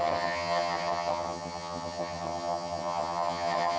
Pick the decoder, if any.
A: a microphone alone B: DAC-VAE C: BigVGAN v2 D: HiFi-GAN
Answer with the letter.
D